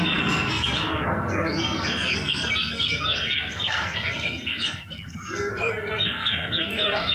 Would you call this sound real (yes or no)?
no